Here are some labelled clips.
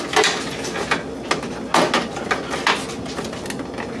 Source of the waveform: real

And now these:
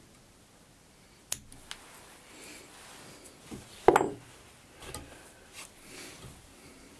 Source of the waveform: real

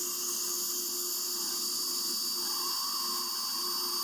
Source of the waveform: real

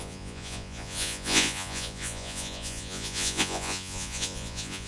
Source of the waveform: fake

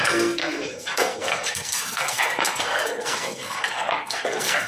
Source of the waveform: fake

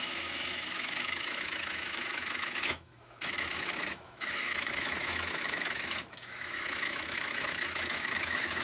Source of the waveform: fake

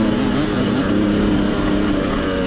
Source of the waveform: real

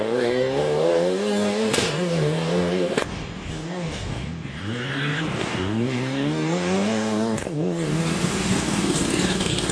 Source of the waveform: fake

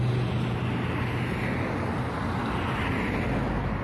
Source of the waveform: real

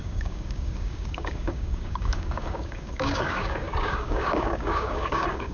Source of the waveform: fake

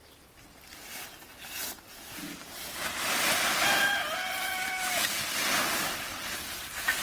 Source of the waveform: real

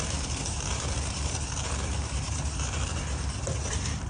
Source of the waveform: fake